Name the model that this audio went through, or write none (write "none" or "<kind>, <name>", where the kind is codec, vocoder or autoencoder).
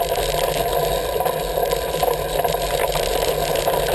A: none